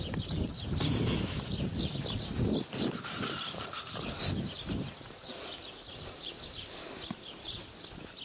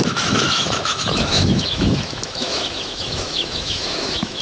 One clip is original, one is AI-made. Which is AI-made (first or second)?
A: second